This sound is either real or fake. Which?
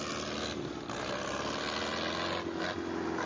real